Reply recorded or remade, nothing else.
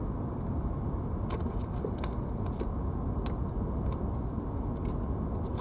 recorded